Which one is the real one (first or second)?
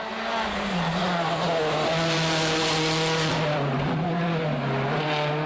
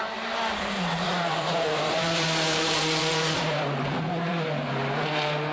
first